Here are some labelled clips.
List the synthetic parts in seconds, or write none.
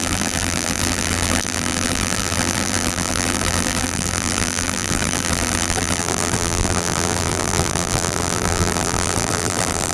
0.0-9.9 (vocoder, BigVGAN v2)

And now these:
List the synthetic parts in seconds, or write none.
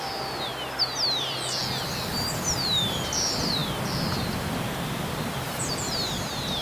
0.0-0.5 (vocoder, BigVGAN v2); 1.2-1.6; 2.1-3.6; 5.1-6.6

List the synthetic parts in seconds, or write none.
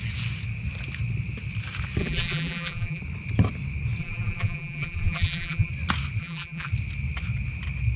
2.0-3.0 (vocoder, BigVGAN v2); 4.0-5.7; 6.2-6.7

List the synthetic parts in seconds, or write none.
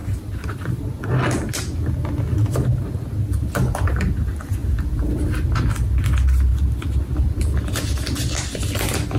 0.0-0.8 (vocoder, BigVGAN v2)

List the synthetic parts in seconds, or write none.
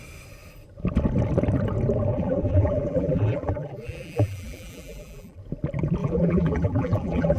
2.1-5.4 (vocoder, BigVGAN v2); 6.0-7.4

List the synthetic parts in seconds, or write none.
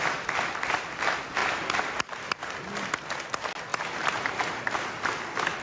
1.4-2.4 (vocoder, BigVGAN v2); 3.7-5.0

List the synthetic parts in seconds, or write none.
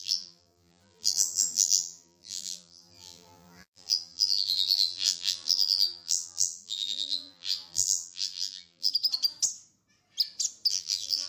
0.0-8.9 (vocoder, BigVGAN v2); 10.7-11.3